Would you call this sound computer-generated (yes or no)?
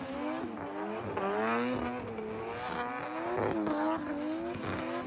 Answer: no